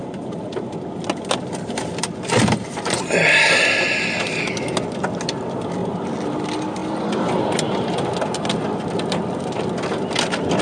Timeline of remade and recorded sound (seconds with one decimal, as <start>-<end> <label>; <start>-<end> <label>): 0.0-10.6 recorded